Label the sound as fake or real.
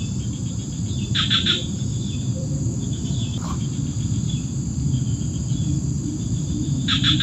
fake